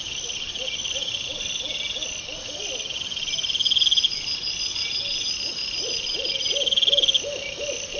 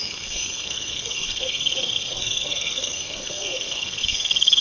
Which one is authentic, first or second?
first